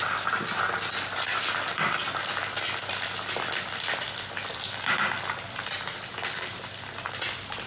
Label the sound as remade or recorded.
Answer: recorded